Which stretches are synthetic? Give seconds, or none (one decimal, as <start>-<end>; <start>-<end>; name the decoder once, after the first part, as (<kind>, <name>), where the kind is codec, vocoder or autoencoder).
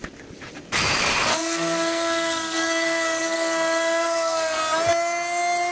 1.3-4.6 (codec, SNAC)